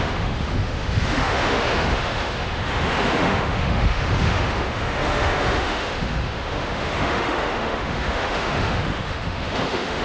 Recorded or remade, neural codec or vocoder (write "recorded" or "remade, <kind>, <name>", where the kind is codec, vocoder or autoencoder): remade, autoencoder, DAC-VAE